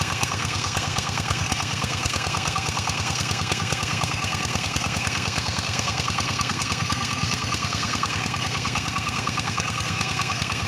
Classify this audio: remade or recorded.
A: remade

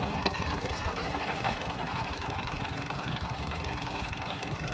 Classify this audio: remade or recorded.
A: remade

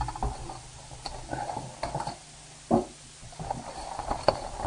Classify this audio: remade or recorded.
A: recorded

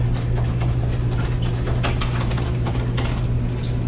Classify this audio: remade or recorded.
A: recorded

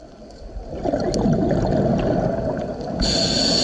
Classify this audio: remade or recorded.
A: recorded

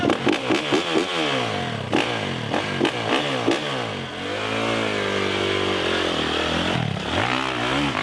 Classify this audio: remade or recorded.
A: recorded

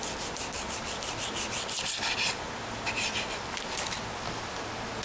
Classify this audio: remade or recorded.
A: recorded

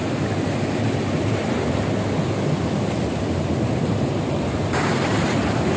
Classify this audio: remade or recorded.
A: recorded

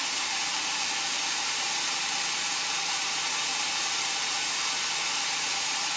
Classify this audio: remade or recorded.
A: remade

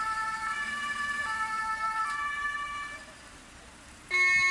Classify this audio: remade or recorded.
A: recorded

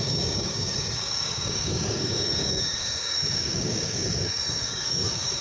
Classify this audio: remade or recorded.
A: remade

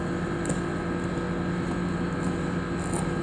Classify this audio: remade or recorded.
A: recorded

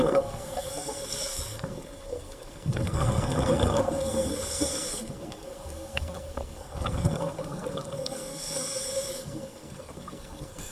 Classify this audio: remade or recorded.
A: remade